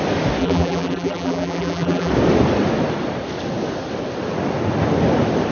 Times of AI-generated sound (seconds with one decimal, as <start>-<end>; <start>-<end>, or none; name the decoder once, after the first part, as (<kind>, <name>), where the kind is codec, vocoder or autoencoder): 0.4-2.1 (vocoder, BigVGAN v2)